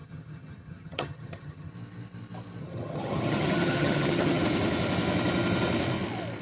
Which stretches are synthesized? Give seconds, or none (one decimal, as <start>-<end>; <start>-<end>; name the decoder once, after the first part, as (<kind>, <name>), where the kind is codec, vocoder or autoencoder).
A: 0.0-1.7 (vocoder, HiFi-GAN); 2.6-4.4